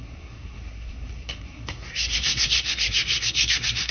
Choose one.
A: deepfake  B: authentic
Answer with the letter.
A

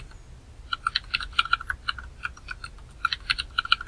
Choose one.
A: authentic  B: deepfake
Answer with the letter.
A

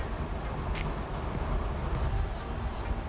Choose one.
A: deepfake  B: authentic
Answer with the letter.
B